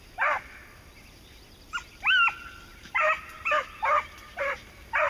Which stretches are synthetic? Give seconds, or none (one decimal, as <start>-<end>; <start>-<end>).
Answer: 2.7-5.1

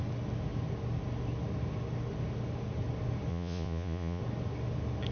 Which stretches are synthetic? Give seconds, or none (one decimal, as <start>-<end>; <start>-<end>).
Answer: 3.3-4.2

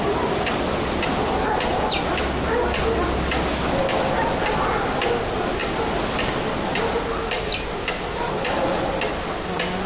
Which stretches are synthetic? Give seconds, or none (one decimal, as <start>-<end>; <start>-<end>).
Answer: none

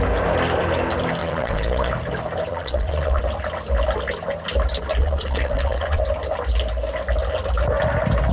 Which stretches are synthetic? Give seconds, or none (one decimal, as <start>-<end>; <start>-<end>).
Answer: 1.2-1.9; 2.5-3.2; 5.0-6.0

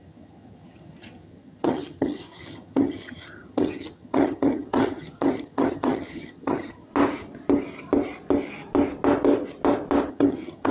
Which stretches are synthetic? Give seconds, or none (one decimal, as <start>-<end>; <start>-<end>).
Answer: 0.0-6.9; 10.1-10.7

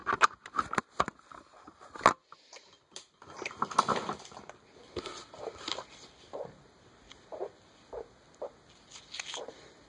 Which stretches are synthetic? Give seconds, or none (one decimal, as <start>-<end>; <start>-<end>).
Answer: none